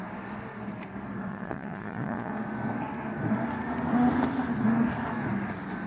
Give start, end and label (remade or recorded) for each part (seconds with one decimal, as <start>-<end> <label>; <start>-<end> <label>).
0.0-1.3 recorded; 1.3-2.3 remade; 2.3-5.9 recorded